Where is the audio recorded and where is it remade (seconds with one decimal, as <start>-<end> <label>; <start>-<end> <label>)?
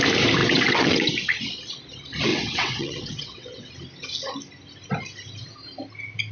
0.0-0.4 recorded; 0.4-1.1 remade; 1.1-2.3 recorded; 2.3-3.7 remade; 3.7-6.3 recorded